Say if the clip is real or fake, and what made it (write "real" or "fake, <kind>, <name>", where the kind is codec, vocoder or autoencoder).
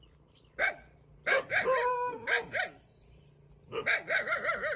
real